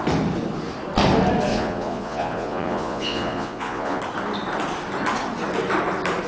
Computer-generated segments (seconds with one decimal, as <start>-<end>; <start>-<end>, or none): 1.5-4.0